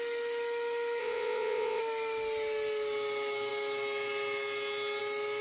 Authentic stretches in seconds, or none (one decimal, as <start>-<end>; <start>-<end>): 0.0-1.0; 1.8-5.4